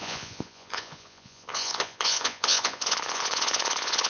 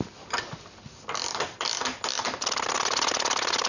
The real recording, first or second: second